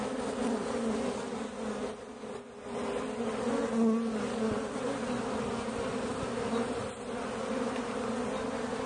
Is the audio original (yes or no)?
yes